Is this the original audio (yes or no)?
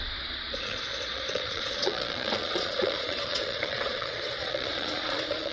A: no